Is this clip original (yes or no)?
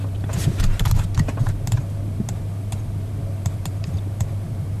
yes